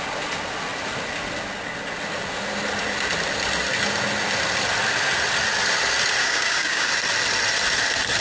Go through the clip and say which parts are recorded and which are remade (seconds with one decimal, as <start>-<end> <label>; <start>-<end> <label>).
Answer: 0.0-6.2 recorded; 6.2-6.9 remade; 6.9-8.2 recorded